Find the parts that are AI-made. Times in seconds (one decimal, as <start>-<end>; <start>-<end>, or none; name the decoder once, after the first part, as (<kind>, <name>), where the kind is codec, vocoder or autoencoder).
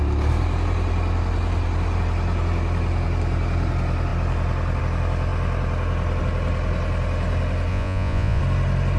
7.7-8.4 (vocoder, Vocos)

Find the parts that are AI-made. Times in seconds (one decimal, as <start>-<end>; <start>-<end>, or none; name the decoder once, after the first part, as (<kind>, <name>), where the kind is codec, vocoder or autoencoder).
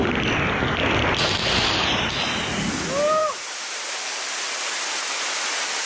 1.4-2.1 (vocoder, BigVGAN v2); 3.2-5.9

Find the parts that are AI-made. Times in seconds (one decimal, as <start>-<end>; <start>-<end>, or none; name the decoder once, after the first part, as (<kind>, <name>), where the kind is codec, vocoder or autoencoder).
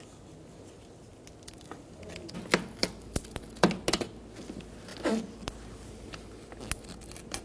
none